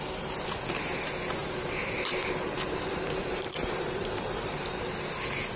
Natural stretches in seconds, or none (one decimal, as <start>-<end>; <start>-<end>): 0.0-1.4; 4.8-5.6